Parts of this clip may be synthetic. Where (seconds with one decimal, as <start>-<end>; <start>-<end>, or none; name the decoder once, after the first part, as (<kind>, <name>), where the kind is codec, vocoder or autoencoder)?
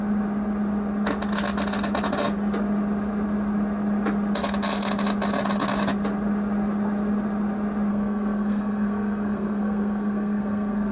7.9-10.9 (codec, SNAC)